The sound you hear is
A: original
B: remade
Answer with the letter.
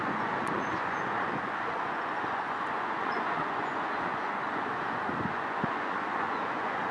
B